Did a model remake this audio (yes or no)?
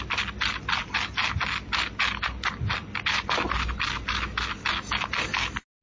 no